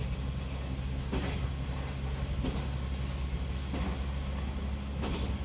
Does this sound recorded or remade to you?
recorded